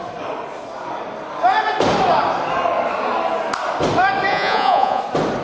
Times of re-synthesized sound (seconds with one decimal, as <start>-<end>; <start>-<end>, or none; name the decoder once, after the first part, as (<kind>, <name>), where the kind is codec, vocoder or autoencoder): 4.3-5.0 (vocoder, Vocos)